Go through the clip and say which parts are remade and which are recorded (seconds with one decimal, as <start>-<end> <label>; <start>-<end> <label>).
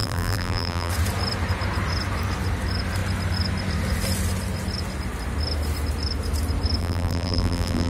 0.0-0.9 remade; 0.9-6.8 recorded; 6.8-7.9 remade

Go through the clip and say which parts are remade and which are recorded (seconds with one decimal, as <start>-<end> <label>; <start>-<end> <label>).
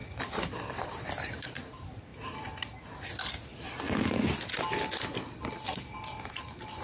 0.0-2.1 remade; 2.1-6.2 recorded; 6.2-6.8 remade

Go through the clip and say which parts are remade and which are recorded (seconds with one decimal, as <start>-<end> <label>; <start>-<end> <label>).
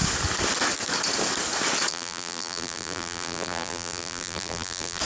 0.0-1.9 recorded; 1.9-5.0 remade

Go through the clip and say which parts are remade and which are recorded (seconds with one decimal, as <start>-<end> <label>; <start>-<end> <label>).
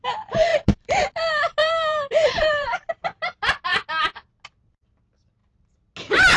0.0-0.5 recorded; 0.5-1.1 remade; 1.1-1.6 recorded; 1.6-2.9 remade; 2.9-6.4 recorded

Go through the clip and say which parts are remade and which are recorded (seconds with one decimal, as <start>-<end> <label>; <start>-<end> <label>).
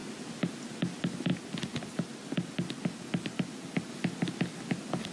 0.0-5.1 recorded